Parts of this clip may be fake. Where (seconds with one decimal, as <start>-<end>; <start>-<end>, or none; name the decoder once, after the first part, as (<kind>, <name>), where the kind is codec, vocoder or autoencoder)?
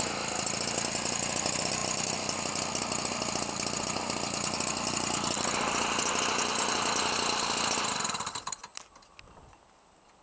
none